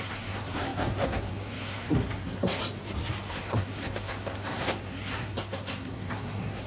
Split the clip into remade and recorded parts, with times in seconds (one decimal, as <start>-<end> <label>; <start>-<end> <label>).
0.0-2.6 remade; 2.6-3.3 recorded; 3.3-6.7 remade